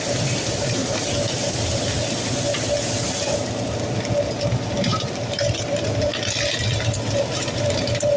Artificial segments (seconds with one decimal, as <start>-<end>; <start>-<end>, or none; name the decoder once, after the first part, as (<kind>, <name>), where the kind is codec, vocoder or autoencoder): 0.0-0.8 (vocoder, BigVGAN v2); 1.4-2.0; 4.8-6.1; 7.1-8.2